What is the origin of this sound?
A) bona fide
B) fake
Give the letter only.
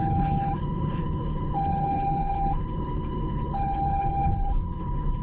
B